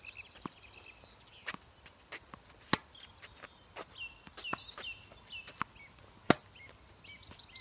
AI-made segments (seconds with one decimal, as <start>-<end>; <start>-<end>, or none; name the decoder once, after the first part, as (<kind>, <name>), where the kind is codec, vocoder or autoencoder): none